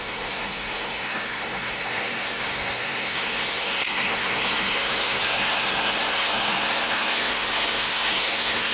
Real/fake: fake